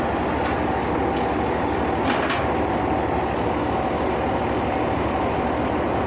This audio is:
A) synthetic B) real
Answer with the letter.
B